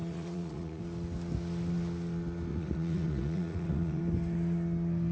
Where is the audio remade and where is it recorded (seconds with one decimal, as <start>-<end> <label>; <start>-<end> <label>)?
0.0-0.8 remade; 0.8-2.5 recorded; 2.5-4.0 remade; 4.0-5.1 recorded